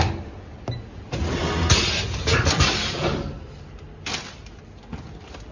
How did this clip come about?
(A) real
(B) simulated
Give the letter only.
A